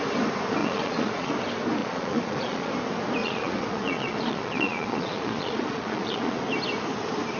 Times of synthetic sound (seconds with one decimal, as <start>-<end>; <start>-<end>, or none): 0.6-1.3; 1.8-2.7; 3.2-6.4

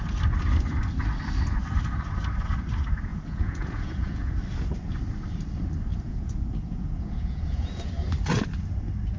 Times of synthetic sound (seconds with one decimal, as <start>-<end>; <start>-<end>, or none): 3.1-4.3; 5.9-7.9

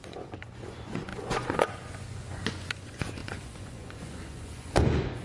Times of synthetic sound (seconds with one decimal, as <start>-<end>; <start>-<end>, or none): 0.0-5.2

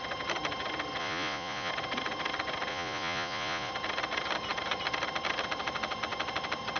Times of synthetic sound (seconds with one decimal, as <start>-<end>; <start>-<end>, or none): 1.0-1.7; 2.7-3.7

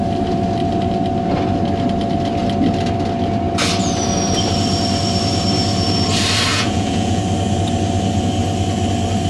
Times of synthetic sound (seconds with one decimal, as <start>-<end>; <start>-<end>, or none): 6.5-7.2

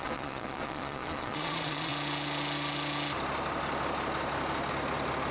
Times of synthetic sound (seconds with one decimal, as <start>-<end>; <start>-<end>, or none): 0.0-1.9